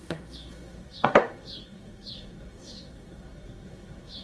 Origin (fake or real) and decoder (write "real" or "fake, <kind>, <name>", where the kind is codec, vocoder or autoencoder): fake, codec, SNAC